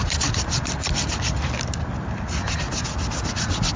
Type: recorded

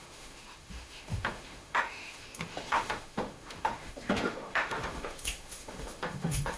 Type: remade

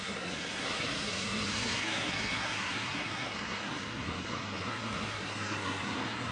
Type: remade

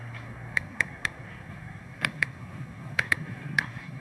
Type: remade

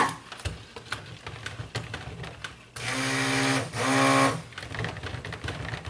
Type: recorded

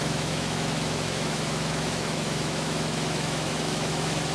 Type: remade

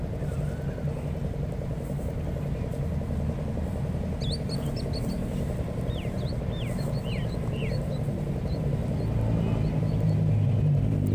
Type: recorded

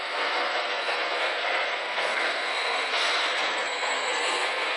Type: remade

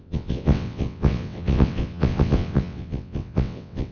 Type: remade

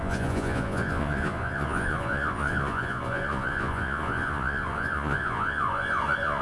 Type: remade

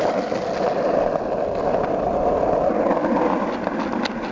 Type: recorded